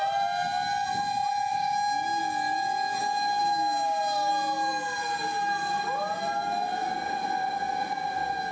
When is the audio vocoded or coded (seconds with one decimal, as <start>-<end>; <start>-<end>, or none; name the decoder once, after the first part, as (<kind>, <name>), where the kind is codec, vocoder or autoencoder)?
1.5-2.2 (codec, DAC); 3.4-4.3